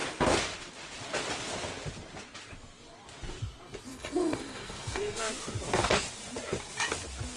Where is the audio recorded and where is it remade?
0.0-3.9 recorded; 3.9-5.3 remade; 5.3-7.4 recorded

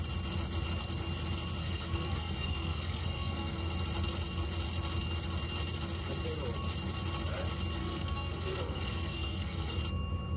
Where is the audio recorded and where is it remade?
0.0-1.6 recorded; 1.6-3.7 remade; 3.7-7.8 recorded; 7.8-9.8 remade; 9.8-10.4 recorded

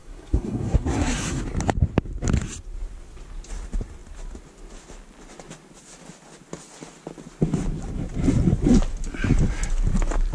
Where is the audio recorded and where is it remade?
0.0-1.4 remade; 1.4-10.3 recorded

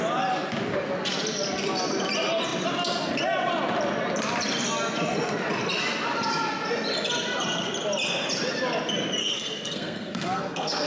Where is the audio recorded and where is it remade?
0.0-9.2 recorded; 9.2-10.9 remade

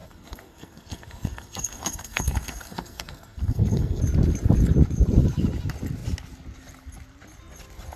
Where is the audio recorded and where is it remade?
0.0-4.0 remade; 4.0-8.0 recorded

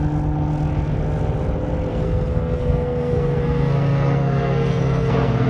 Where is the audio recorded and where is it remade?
0.0-1.9 recorded; 1.9-5.5 remade

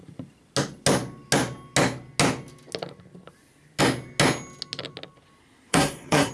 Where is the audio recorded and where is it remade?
0.0-5.4 recorded; 5.4-6.3 remade